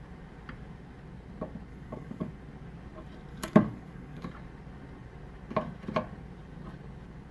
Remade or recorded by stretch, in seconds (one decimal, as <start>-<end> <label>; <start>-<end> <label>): 0.0-1.7 recorded; 1.7-2.3 remade; 2.3-3.3 recorded; 3.3-4.3 remade; 4.3-7.3 recorded